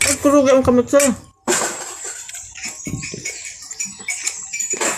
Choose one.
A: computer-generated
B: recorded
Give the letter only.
B